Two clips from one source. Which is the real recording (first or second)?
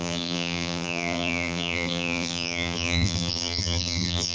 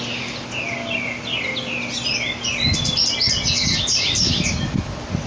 second